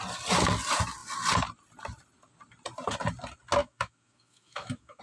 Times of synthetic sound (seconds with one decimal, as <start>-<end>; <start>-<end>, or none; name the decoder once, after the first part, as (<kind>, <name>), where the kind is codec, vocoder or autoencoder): 3.6-5.0 (autoencoder, DAC-VAE)